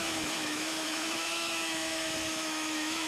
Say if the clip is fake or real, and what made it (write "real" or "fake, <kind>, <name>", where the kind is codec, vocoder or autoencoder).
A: fake, autoencoder, DAC-VAE